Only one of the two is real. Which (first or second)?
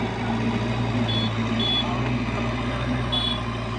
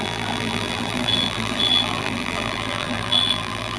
first